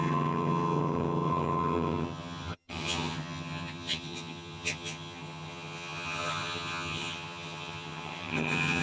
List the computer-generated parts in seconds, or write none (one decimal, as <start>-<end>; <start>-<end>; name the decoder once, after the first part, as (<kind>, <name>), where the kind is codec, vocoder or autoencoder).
0.0-8.8 (vocoder, HiFi-GAN)